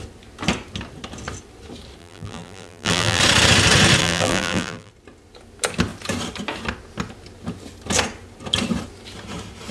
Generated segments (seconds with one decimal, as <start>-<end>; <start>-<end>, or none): 2.0-3.2; 4.0-4.9